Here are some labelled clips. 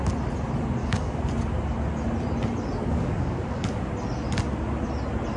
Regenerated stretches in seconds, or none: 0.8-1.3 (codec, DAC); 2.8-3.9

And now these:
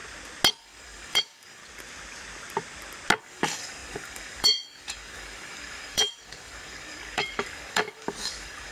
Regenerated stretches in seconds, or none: 0.6-1.6 (codec, DAC); 3.2-8.7